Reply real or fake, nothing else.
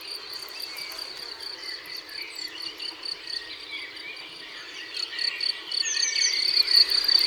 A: real